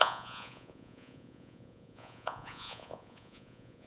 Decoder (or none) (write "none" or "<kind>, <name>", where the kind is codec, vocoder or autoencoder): vocoder, Vocos